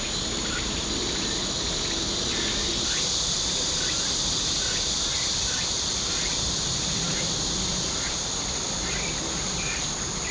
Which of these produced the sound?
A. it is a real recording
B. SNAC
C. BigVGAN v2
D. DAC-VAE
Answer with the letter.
A